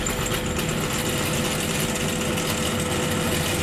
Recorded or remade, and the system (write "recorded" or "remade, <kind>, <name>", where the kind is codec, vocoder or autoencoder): recorded